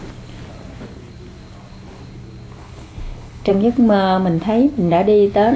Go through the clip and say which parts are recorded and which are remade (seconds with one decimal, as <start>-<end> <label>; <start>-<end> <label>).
0.0-2.6 recorded; 2.6-3.5 remade; 3.5-5.6 recorded